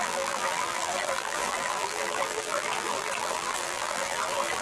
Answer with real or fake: fake